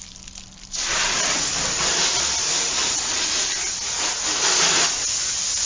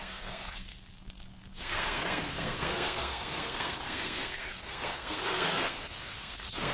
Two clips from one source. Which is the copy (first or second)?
second